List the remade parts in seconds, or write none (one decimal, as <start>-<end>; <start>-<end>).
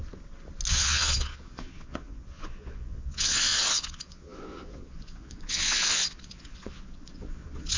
0.7-7.8